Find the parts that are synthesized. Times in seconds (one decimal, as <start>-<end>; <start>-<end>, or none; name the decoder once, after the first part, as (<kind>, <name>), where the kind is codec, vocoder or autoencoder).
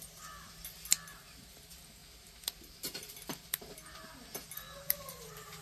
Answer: none